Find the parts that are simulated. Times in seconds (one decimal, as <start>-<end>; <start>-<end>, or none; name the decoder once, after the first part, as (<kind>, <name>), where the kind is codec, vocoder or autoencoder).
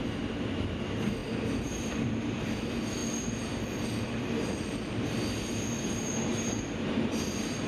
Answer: 0.0-7.7 (vocoder, BigVGAN v2)